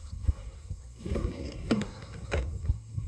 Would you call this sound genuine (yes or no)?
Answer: no